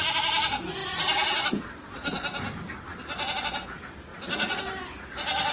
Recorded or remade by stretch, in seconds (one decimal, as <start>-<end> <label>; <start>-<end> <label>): 0.0-4.1 recorded; 4.1-4.6 remade; 4.6-5.5 recorded